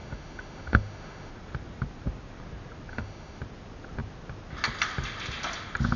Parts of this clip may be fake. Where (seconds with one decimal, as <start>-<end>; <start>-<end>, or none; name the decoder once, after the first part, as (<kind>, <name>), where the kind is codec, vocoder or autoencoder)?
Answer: 0.0-1.3 (autoencoder, DAC-VAE); 2.9-3.4